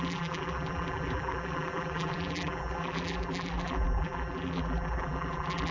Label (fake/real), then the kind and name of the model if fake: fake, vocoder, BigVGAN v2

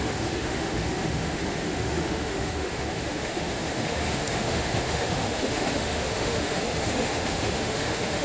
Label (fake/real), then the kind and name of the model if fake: fake, autoencoder, DAC-VAE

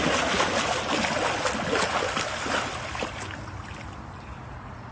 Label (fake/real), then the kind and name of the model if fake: real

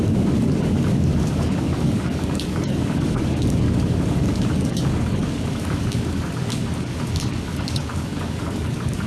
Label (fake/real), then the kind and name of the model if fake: fake, codec, DAC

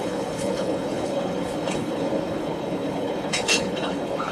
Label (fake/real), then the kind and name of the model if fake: fake, codec, HILCodec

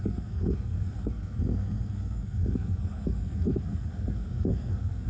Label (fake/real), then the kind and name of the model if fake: fake, codec, SNAC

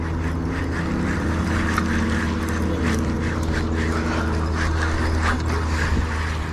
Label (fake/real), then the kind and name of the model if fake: real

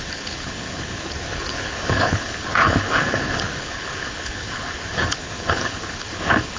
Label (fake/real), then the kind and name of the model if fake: fake, codec, HILCodec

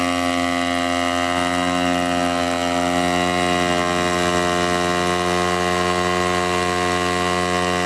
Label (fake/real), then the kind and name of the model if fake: real